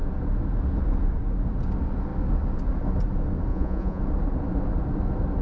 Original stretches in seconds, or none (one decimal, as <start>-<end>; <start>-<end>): 0.0-3.5; 4.0-5.4